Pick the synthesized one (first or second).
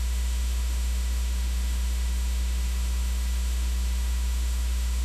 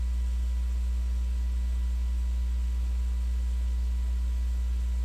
first